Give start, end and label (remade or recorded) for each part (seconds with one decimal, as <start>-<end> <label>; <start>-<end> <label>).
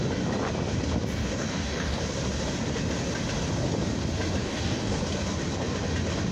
0.0-1.2 recorded; 1.2-2.0 remade; 2.0-4.4 recorded; 4.4-5.0 remade; 5.0-6.3 recorded